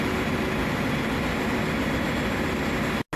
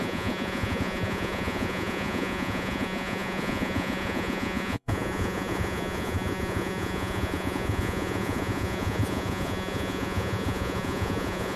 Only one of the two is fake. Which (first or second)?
second